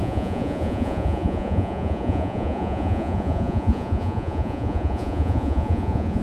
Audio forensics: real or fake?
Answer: fake